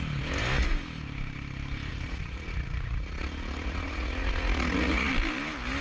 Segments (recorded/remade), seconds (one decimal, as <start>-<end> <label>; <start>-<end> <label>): 0.0-1.9 recorded; 1.9-5.1 remade; 5.1-5.8 recorded